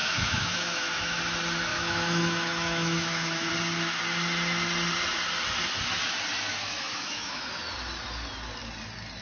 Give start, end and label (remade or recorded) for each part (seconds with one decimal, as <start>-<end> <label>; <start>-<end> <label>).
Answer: 0.0-1.2 remade; 1.2-1.7 recorded; 1.7-3.5 remade; 3.5-6.5 recorded; 6.5-7.4 remade; 7.4-9.2 recorded